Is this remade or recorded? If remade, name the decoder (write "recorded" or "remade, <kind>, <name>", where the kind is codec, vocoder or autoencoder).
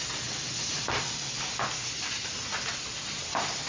recorded